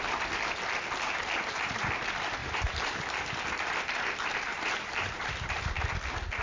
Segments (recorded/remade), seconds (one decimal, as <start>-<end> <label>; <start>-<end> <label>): 0.0-2.4 recorded; 2.4-3.3 remade; 3.3-4.5 recorded; 4.5-5.6 remade; 5.6-6.4 recorded